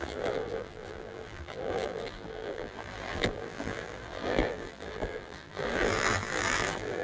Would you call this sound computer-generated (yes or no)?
yes